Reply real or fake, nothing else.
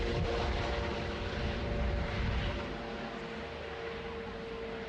real